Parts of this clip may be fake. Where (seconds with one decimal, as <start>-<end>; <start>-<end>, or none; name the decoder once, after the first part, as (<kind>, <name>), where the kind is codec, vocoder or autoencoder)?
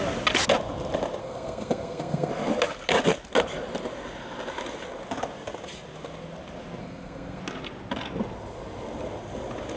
1.2-2.3 (codec, SNAC); 6.8-7.4